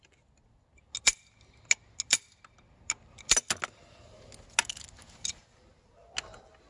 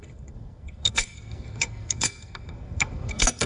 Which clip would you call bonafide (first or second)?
first